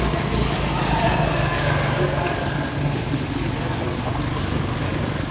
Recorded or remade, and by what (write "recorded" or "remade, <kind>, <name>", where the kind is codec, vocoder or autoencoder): remade, codec, DAC